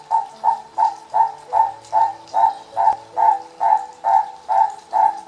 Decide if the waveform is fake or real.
fake